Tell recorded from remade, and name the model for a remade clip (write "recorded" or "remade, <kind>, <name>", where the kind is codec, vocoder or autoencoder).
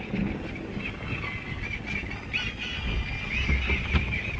recorded